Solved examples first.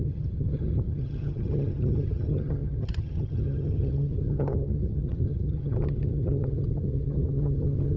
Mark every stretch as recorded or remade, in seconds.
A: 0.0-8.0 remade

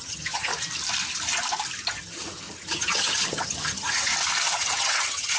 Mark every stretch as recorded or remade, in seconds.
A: 0.0-0.5 remade; 0.5-1.9 recorded; 1.9-4.1 remade; 4.1-4.6 recorded; 4.6-5.4 remade